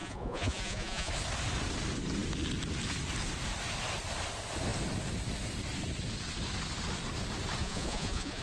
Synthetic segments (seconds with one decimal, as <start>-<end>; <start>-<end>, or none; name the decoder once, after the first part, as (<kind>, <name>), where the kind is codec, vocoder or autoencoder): 0.0-1.1 (vocoder, Vocos); 7.6-8.4